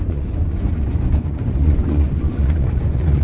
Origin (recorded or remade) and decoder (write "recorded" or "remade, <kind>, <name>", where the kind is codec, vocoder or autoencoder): remade, vocoder, Vocos